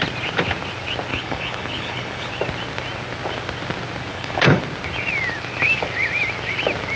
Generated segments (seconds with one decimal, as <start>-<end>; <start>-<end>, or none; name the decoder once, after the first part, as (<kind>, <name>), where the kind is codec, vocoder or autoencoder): 1.1-2.3 (codec, HILCodec); 4.1-4.6